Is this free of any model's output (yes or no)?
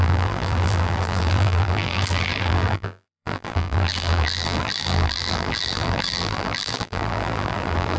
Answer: no